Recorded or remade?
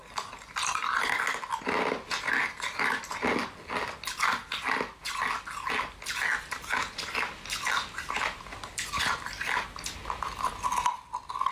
recorded